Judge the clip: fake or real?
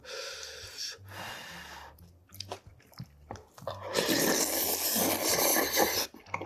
real